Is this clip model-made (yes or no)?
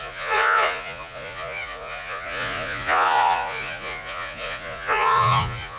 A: yes